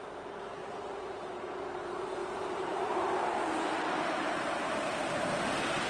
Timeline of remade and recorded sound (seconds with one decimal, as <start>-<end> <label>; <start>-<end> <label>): 0.0-0.6 recorded; 0.6-1.2 remade; 1.2-2.2 recorded; 2.2-5.9 remade